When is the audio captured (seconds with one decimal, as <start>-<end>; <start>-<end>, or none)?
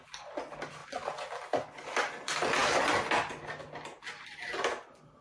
0.0-5.2